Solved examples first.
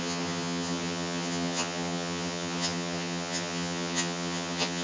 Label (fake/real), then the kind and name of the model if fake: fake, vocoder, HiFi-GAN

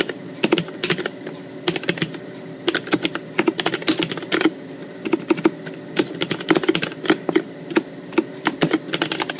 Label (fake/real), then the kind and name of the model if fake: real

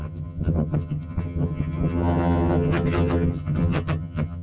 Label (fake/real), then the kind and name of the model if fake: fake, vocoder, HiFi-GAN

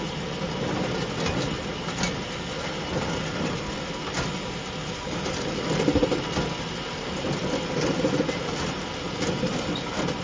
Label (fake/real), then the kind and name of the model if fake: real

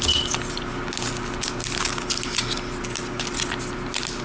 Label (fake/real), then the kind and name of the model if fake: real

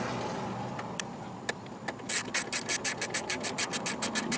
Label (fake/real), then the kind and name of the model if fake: real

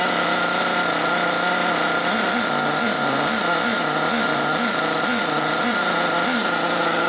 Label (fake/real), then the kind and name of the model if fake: real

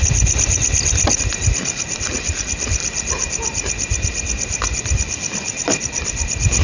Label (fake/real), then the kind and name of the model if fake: real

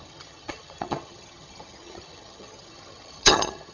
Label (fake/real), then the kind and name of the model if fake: fake, vocoder, HiFi-GAN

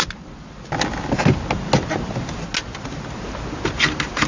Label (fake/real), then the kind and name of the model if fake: real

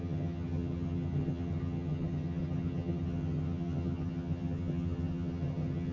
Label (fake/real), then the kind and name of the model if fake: fake, vocoder, HiFi-GAN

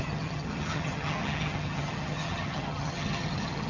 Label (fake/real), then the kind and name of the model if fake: fake, vocoder, HiFi-GAN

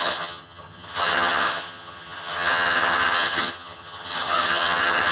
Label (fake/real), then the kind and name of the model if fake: fake, vocoder, HiFi-GAN